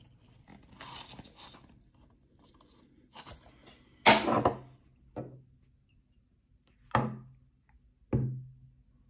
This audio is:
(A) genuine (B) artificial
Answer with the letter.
A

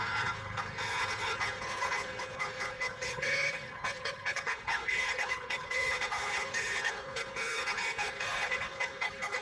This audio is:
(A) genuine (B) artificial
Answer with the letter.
B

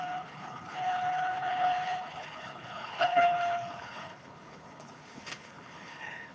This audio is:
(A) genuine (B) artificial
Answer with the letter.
B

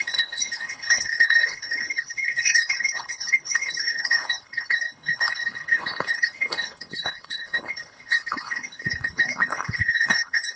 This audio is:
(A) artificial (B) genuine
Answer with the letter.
A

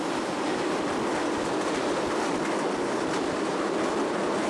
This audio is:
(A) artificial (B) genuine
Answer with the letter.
B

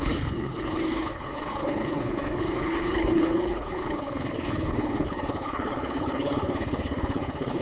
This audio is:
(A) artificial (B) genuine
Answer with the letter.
A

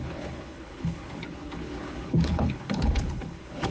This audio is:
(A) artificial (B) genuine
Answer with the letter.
A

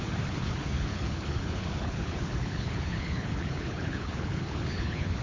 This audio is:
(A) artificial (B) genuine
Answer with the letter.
A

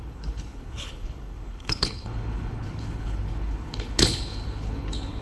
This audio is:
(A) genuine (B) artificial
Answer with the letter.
B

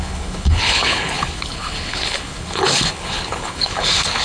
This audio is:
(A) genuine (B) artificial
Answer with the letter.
B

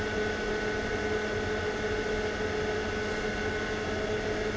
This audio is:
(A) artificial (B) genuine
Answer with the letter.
B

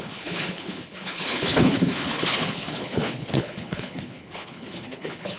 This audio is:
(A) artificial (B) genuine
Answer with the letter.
A